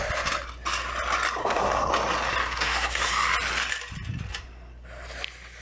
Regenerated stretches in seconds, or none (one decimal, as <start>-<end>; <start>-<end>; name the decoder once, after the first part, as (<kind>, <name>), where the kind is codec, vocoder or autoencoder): 1.4-1.9 (codec, SNAC); 2.4-3.1